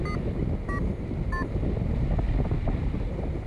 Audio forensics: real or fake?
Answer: real